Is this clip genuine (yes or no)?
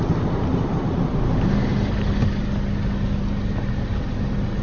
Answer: yes